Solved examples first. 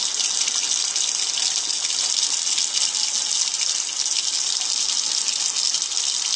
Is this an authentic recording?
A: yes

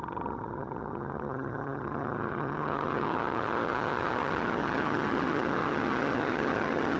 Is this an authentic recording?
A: no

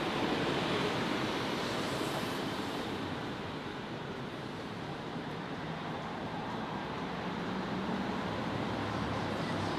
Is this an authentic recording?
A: no